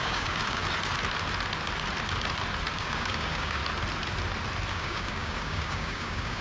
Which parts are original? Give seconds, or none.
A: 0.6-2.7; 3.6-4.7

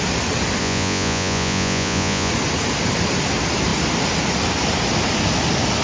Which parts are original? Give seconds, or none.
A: 0.0-0.6; 2.3-5.8

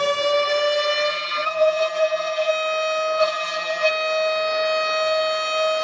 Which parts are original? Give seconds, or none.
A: 0.0-1.1; 2.5-3.2; 3.9-5.8

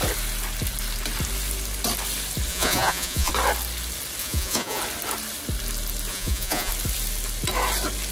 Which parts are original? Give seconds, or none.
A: 0.0-2.5; 3.3-4.2; 4.8-6.1; 6.7-8.1

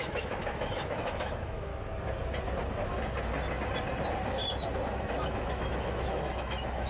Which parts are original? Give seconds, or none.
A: 1.7-5.0